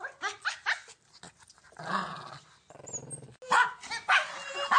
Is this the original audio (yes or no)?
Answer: yes